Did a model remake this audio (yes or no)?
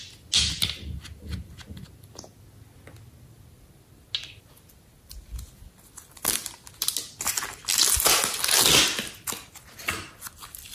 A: no